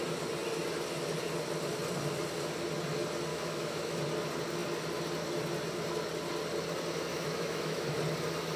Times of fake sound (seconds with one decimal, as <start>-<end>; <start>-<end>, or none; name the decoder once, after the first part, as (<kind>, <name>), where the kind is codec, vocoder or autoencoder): 3.3-4.0 (autoencoder, DAC-VAE); 7.1-8.0